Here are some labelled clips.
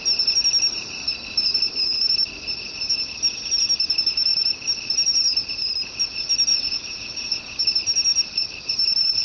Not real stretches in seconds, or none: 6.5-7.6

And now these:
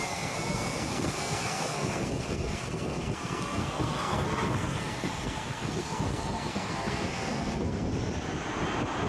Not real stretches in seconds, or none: 0.0-7.9

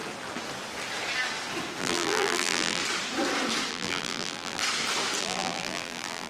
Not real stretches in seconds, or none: 1.8-2.8; 3.7-4.6; 5.2-6.3

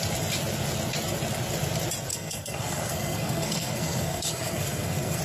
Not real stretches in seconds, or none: 2.1-5.2

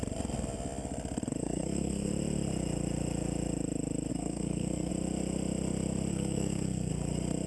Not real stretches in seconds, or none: 1.4-2.1; 4.1-4.9; 6.1-6.9

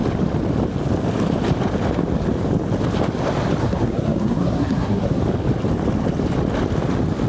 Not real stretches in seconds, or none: 3.6-5.2

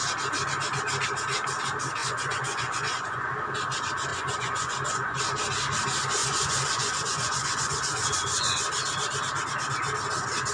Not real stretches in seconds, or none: 2.0-3.3; 4.1-5.2; 6.2-8.6